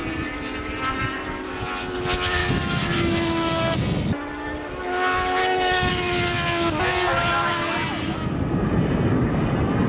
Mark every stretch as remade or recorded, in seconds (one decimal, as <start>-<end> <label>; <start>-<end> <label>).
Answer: 0.0-2.4 recorded; 2.4-3.8 remade; 3.8-5.4 recorded; 5.4-5.9 remade; 5.9-9.9 recorded

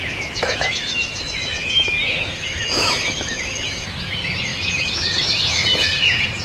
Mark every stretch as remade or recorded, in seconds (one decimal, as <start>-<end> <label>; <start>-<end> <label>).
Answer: 0.0-6.4 remade

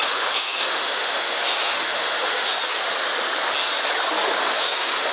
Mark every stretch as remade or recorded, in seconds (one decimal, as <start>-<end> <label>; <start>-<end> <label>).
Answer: 0.0-2.6 remade; 2.6-4.4 recorded; 4.4-5.1 remade

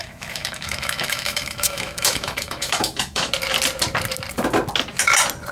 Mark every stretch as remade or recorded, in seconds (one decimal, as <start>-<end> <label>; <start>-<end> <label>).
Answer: 0.0-3.3 remade; 3.3-5.5 recorded